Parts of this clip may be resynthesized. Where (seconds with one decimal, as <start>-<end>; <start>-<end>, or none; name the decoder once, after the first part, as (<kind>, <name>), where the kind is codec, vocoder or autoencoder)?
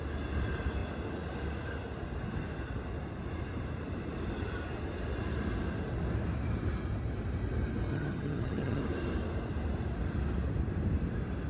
7.9-8.8 (vocoder, HiFi-GAN)